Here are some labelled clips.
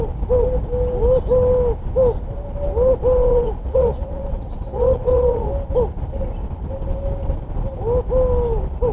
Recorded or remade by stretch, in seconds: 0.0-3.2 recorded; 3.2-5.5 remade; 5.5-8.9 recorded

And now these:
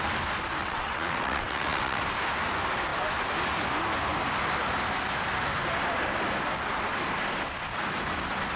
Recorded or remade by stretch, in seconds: 0.0-0.6 recorded; 0.6-2.0 remade; 2.0-8.6 recorded

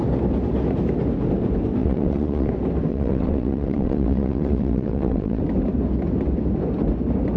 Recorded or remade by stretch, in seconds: 0.0-1.8 recorded; 1.8-2.5 remade; 2.5-2.9 recorded; 2.9-5.4 remade; 5.4-7.4 recorded

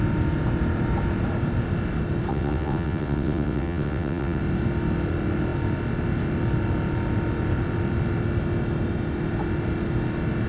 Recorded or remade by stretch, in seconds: 0.0-2.3 recorded; 2.3-4.4 remade; 4.4-10.5 recorded